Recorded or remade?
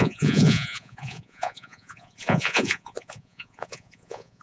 remade